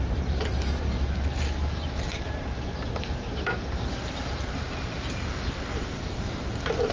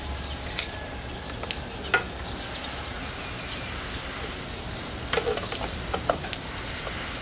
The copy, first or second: first